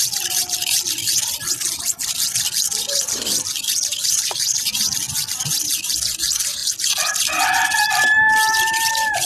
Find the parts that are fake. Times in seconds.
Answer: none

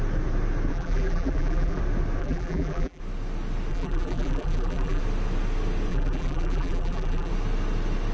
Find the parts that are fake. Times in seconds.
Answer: 0.7-1.8; 2.2-3.0; 3.7-5.0; 5.9-7.3

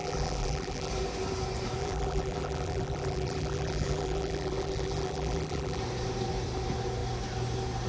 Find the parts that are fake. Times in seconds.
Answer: 0.0-0.9; 1.8-5.8

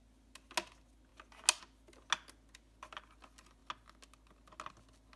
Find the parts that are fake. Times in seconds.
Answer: none

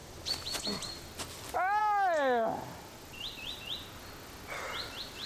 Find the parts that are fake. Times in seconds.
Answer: none